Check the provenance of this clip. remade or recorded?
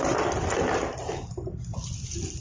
recorded